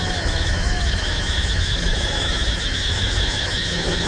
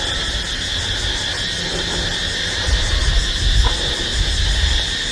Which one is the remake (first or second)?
first